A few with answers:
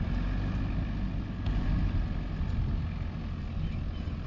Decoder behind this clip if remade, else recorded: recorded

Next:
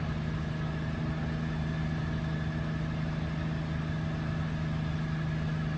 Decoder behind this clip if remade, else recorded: recorded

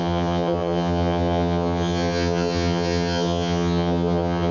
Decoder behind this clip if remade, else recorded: remade, vocoder, HiFi-GAN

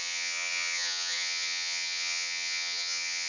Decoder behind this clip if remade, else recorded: remade, vocoder, HiFi-GAN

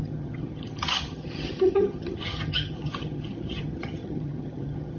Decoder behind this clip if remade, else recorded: remade, vocoder, HiFi-GAN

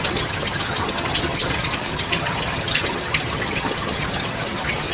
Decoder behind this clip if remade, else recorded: remade, vocoder, HiFi-GAN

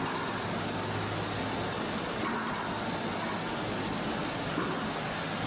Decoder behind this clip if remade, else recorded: recorded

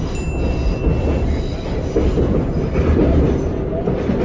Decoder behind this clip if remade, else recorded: recorded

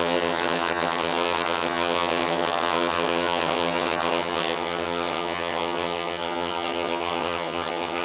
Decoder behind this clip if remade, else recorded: remade, vocoder, HiFi-GAN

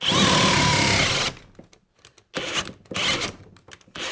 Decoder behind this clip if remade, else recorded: recorded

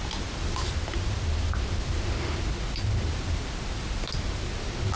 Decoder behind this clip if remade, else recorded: recorded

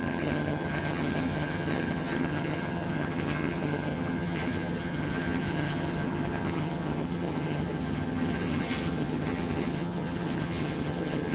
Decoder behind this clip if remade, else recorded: remade, vocoder, HiFi-GAN